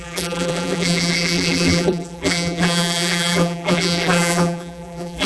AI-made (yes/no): yes